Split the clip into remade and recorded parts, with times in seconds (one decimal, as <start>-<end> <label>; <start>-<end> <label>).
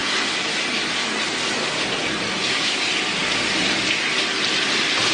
0.0-5.1 recorded